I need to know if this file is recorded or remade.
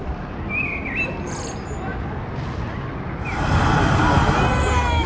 recorded